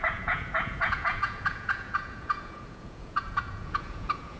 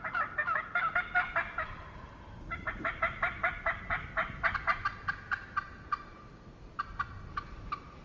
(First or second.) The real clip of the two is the second